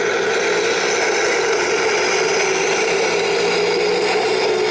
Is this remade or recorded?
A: recorded